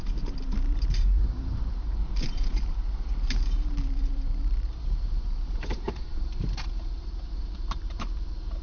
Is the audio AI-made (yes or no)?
yes